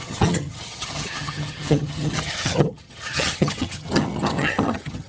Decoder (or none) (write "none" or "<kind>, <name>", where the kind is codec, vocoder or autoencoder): vocoder, HiFi-GAN